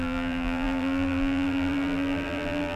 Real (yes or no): no